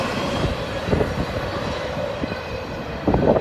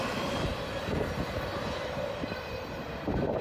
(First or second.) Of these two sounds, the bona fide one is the second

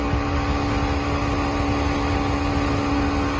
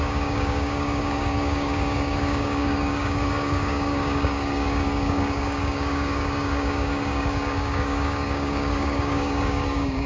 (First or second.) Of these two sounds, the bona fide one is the first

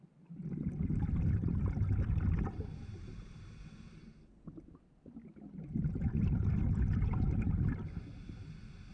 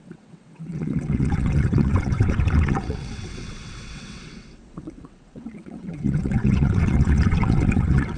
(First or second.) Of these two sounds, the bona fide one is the first